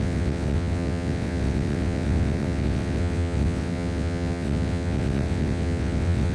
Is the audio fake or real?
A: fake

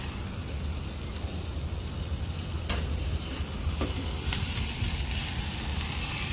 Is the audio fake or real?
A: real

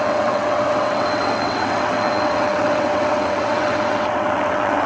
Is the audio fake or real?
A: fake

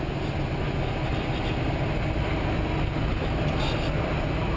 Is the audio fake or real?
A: real